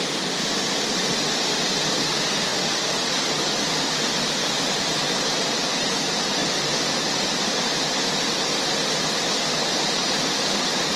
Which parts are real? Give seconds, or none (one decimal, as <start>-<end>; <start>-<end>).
0.0-11.0